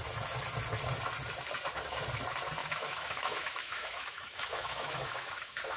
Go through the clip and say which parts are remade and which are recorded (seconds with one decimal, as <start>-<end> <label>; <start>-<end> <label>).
0.0-2.6 recorded; 2.6-5.8 remade